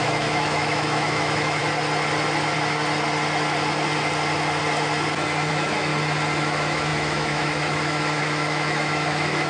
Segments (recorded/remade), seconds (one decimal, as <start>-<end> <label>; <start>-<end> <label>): 0.0-1.6 remade; 1.6-5.5 recorded; 5.5-5.9 remade; 5.9-6.4 recorded; 6.4-9.5 remade

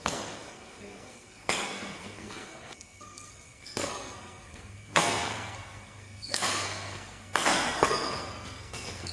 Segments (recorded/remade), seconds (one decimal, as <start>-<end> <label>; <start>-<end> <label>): 0.0-9.1 remade